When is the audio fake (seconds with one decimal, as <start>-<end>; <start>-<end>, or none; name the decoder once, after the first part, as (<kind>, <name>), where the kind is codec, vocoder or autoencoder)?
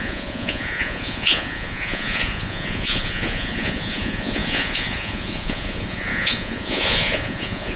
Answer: 0.0-7.8 (vocoder, Vocos)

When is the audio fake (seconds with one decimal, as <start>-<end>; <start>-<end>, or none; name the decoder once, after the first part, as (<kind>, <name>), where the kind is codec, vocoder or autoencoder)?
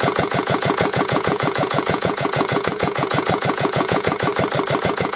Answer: 0.0-4.3 (vocoder, Vocos); 4.8-5.2